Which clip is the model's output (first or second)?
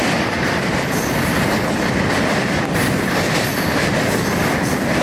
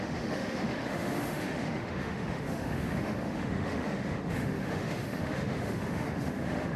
second